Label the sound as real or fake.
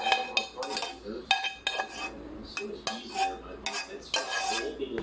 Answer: real